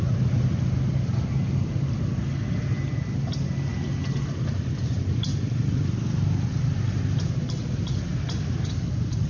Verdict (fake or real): real